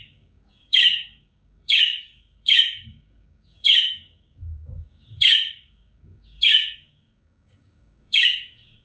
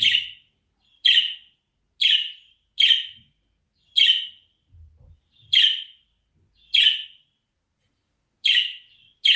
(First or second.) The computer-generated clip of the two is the first